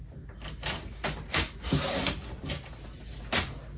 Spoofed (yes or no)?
no